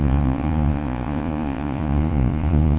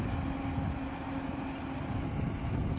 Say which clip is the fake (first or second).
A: first